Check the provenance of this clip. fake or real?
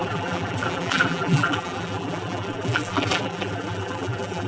fake